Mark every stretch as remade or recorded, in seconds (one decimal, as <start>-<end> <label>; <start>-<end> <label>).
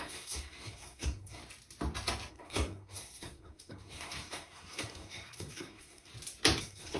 0.0-1.4 remade; 1.4-2.3 recorded; 2.3-6.1 remade; 6.1-6.6 recorded; 6.6-7.0 remade